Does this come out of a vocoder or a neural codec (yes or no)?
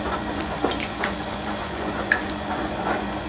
yes